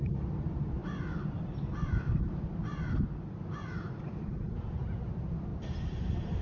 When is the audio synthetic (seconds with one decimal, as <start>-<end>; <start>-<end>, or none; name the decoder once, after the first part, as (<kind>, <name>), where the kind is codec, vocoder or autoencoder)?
0.8-4.6 (vocoder, BigVGAN v2); 5.5-6.4